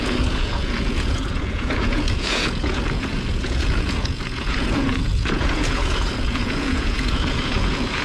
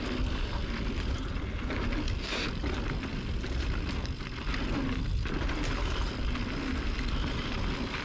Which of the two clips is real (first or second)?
second